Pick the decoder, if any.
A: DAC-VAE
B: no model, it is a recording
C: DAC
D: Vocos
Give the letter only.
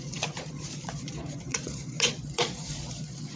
D